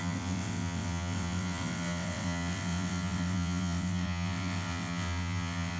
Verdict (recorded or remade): remade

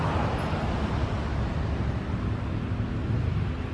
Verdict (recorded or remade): recorded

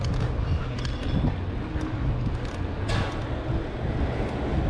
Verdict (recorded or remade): recorded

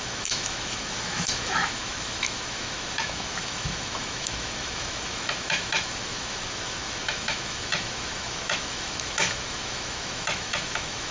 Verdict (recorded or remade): remade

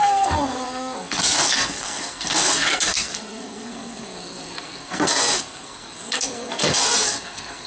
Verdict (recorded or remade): remade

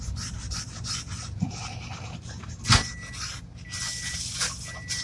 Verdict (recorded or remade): recorded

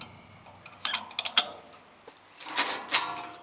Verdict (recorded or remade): recorded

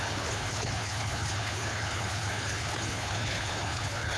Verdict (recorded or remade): remade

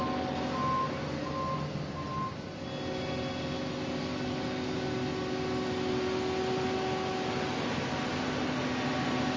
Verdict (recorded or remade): recorded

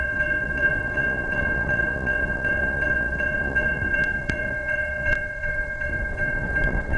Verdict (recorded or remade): remade